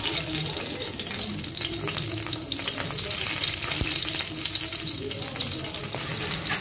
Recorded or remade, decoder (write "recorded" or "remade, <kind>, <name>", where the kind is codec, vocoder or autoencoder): recorded